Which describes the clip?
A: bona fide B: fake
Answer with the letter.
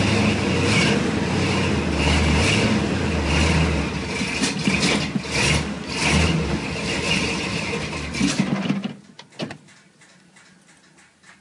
A